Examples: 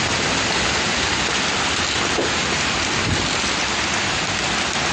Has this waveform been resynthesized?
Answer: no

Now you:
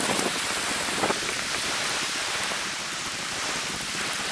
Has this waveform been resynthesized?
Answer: no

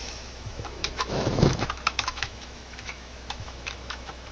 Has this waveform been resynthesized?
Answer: yes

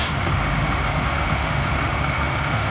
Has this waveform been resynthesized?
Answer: yes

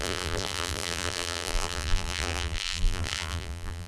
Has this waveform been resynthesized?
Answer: yes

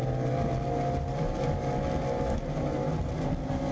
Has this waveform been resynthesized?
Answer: no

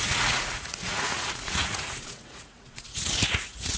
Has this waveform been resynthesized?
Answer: yes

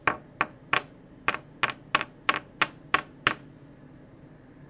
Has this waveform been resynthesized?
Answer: no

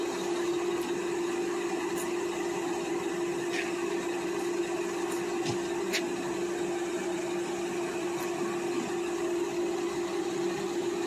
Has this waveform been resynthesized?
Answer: no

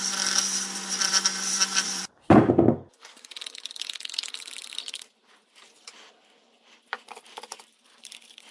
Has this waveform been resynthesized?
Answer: yes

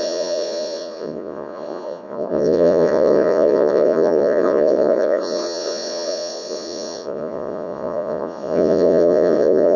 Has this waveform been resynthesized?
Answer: yes